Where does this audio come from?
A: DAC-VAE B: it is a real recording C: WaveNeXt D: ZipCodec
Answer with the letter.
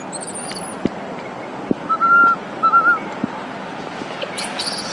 B